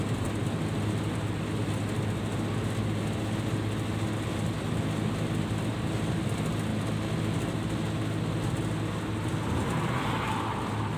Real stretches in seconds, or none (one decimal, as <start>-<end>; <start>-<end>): 0.0-11.0